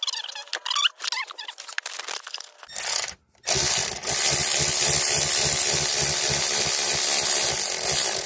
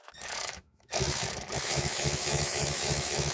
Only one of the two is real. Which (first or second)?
first